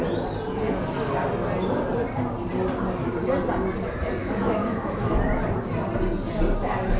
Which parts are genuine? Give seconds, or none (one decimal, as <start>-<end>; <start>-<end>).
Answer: 0.0-4.2; 5.2-7.0